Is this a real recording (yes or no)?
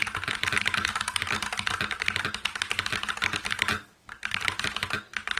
yes